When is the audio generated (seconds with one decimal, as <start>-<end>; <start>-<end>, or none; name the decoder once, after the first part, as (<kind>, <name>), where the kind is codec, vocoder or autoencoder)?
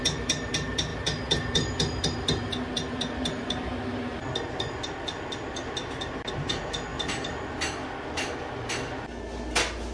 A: none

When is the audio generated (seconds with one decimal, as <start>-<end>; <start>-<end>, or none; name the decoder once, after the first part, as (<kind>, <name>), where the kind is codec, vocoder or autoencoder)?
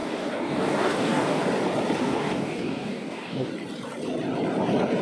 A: 0.0-1.4 (codec, DAC); 2.0-3.5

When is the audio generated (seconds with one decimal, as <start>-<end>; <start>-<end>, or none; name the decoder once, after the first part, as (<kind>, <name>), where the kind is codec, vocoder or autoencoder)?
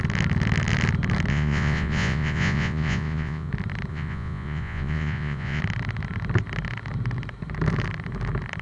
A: 1.3-3.5 (vocoder, Vocos); 3.9-5.6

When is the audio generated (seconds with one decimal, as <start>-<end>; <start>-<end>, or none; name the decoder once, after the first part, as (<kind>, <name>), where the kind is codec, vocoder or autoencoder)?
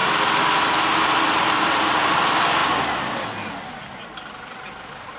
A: none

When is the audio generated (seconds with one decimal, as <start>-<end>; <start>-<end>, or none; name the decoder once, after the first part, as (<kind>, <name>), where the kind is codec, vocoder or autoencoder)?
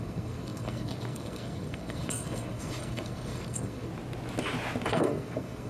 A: 0.0-3.9 (codec, SNAC); 4.9-5.7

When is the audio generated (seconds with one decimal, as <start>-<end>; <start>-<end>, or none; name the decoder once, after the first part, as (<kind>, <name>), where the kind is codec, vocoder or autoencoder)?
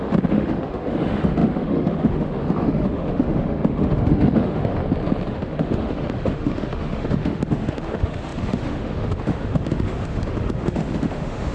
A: 0.0-4.8 (autoencoder, DAC-VAE); 5.3-11.5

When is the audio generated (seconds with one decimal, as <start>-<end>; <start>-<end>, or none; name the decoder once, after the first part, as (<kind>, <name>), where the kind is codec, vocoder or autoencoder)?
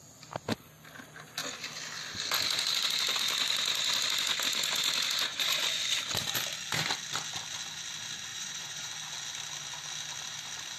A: 5.3-5.8 (vocoder, Vocos); 8.3-8.9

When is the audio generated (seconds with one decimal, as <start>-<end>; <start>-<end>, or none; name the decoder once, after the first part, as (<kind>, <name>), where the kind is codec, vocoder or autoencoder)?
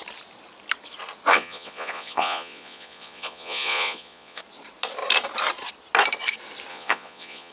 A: 1.3-4.4 (vocoder, Vocos); 6.7-7.5